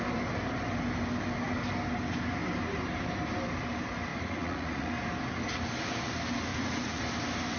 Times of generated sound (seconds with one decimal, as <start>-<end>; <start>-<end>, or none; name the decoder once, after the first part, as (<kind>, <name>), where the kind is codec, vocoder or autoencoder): 4.1-4.9 (vocoder, Vocos); 6.5-7.0